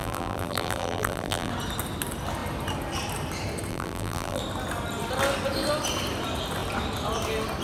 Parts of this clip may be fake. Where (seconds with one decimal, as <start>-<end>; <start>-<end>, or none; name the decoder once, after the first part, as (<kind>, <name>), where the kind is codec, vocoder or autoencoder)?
0.0-1.5 (vocoder, BigVGAN v2); 3.7-4.4